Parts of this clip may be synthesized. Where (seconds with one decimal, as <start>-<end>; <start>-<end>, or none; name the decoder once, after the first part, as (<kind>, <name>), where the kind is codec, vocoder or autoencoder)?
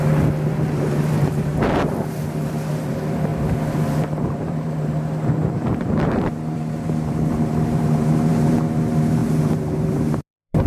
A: 0.0-1.5 (vocoder, BigVGAN v2); 2.2-10.7